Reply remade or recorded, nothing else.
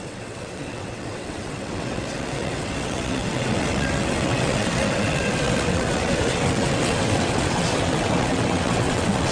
remade